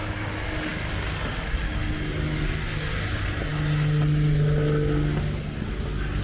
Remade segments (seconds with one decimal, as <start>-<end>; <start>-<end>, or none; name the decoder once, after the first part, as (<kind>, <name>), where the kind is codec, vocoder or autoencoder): none